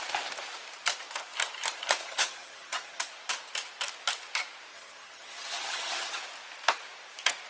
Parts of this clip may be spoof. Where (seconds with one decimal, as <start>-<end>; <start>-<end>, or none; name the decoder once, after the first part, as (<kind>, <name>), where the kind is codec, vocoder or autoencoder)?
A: 2.0-3.0 (vocoder, HiFi-GAN); 4.7-6.2

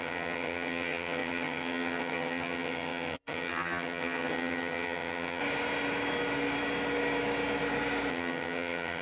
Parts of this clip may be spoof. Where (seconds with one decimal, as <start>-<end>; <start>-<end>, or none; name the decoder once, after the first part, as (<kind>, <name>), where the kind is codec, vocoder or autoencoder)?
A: 0.0-5.4 (vocoder, HiFi-GAN); 8.1-9.0

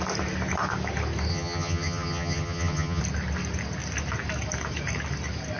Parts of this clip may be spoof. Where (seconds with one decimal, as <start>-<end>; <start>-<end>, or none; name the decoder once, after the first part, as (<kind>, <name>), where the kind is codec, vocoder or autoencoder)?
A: 1.3-3.0 (vocoder, HiFi-GAN)

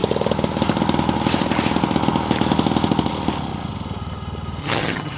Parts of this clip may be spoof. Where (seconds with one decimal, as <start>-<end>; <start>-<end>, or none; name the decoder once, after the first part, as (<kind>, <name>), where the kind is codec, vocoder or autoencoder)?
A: 4.6-5.2 (vocoder, HiFi-GAN)